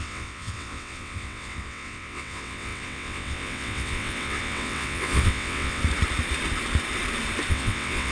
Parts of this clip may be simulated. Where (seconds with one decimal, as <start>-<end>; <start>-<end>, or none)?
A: 0.0-5.8; 7.5-8.1